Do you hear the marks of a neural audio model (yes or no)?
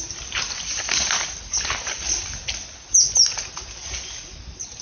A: no